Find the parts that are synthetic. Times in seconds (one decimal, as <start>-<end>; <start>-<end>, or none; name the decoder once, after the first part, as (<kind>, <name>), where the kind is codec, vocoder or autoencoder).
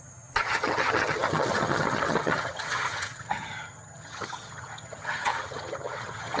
0.0-6.4 (vocoder, HiFi-GAN)